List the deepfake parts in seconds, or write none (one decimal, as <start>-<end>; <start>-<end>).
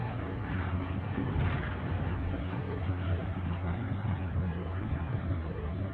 0.0-1.3; 2.1-5.9